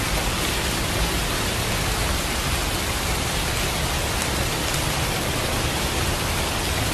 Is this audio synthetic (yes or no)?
no